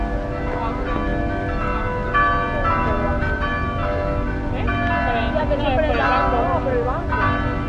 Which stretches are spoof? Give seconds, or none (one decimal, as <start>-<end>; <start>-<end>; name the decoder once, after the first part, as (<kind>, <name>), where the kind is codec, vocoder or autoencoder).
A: none